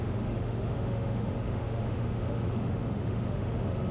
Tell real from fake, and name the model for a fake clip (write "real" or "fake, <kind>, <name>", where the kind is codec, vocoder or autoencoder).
fake, autoencoder, DAC-VAE